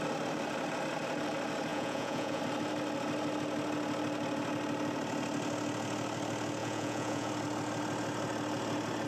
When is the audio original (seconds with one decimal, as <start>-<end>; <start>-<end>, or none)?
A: 0.0-1.7; 2.4-6.6; 7.3-9.1